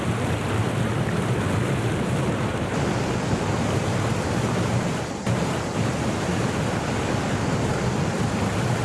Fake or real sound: real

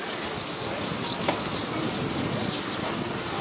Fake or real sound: real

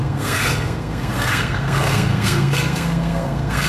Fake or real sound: fake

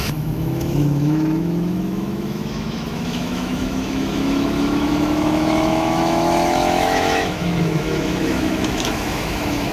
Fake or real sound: fake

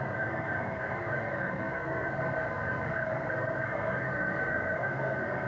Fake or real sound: fake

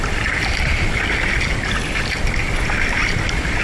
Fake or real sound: real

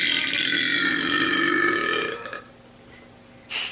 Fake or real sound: real